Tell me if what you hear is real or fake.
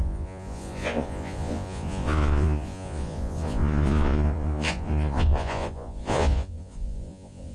fake